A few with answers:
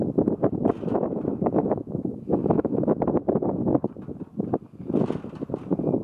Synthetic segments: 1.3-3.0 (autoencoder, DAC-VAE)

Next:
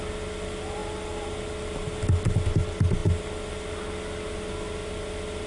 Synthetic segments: none

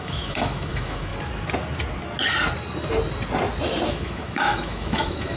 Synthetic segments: 0.0-1.1 (autoencoder, DAC-VAE); 3.9-5.4

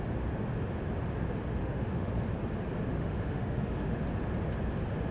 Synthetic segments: 1.6-2.1 (autoencoder, DAC-VAE); 2.9-4.0

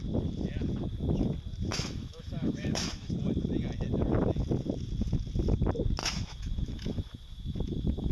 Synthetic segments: 1.7-3.1 (autoencoder, DAC-VAE); 6.0-8.1

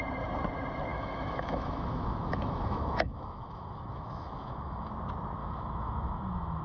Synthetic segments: 0.9-4.9 (autoencoder, DAC-VAE); 5.4-6.6

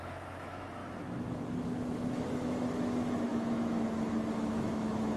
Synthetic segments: 0.0-5.2 (autoencoder, DAC-VAE)

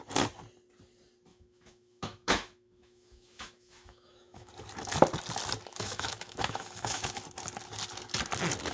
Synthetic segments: 1.3-4.5 (autoencoder, DAC-VAE); 5.7-7.2